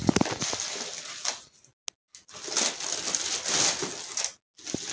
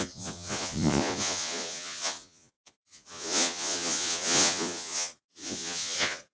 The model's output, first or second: second